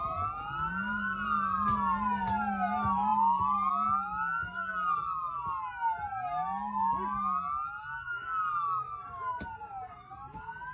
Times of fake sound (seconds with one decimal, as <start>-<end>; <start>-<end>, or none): none